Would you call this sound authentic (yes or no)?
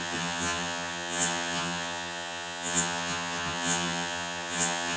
no